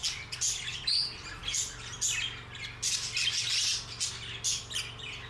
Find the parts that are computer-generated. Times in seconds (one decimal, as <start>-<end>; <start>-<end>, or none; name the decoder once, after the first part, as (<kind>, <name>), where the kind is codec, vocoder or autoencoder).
none

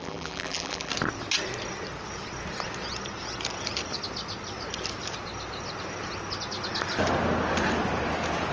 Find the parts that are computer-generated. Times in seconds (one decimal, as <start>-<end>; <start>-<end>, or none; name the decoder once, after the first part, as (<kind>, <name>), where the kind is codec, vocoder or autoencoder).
0.0-0.9 (vocoder, BigVGAN v2)

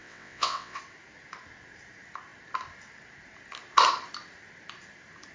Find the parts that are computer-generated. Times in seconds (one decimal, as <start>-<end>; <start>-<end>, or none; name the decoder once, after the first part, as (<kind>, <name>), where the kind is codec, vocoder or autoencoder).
0.0-0.8 (vocoder, WaveNeXt)

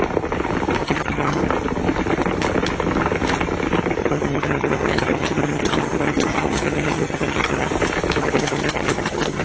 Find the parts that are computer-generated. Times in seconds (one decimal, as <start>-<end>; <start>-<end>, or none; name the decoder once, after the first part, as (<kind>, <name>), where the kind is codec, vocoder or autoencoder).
0.8-1.4 (vocoder, HiFi-GAN); 4.0-7.7; 8.2-9.4

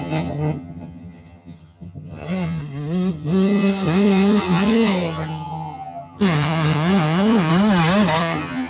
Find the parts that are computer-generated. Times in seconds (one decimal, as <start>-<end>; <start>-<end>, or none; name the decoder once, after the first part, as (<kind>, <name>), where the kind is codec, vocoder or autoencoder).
0.0-2.6 (vocoder, HiFi-GAN); 3.1-7.5; 8.2-8.7

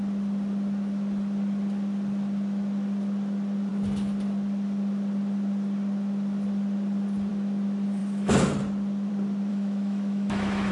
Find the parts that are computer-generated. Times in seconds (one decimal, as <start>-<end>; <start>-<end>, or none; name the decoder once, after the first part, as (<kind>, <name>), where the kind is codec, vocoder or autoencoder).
9.5-10.7 (autoencoder, DAC-VAE)